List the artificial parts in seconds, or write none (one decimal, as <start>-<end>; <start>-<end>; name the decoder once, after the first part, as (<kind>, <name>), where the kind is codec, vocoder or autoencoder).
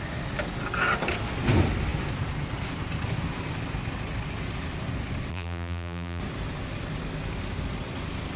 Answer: 5.3-6.2 (vocoder, BigVGAN v2)